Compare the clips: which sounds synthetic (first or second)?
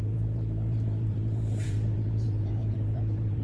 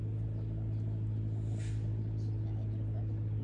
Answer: first